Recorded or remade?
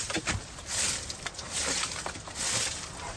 recorded